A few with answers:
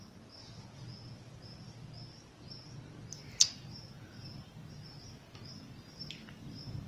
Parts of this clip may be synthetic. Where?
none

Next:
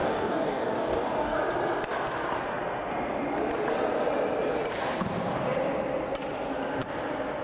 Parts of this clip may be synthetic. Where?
0.0-1.4

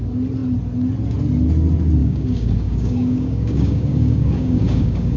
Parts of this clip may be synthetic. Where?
2.0-5.2